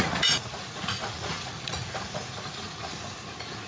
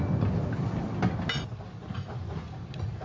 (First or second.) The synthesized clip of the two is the first